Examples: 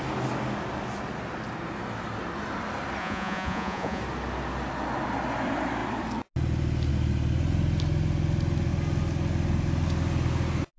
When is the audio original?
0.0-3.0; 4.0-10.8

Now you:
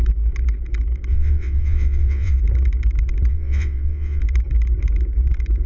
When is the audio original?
0.0-1.1; 2.4-3.3; 4.2-5.7

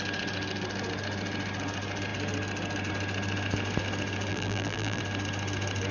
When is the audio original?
0.0-4.3; 5.0-5.9